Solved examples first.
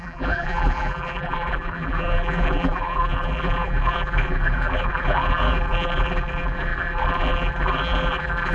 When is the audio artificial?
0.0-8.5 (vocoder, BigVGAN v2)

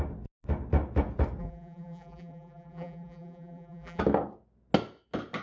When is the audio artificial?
1.4-4.0 (vocoder, BigVGAN v2)

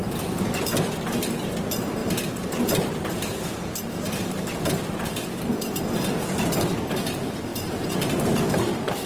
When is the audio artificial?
2.0-5.8 (vocoder, BigVGAN v2); 7.5-9.1

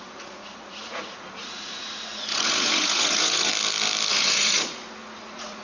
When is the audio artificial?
0.0-3.5 (vocoder, Vocos); 4.1-5.6

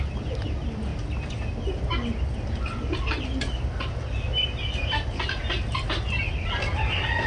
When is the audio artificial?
none